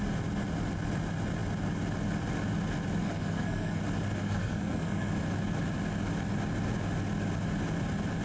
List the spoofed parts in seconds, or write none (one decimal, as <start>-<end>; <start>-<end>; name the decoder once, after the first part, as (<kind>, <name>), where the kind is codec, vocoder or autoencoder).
3.0-3.8 (codec, SNAC); 4.2-5.1